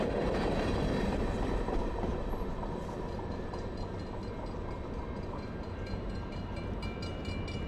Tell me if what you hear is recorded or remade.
remade